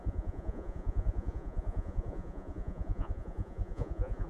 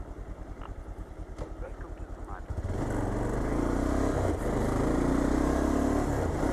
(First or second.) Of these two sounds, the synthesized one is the first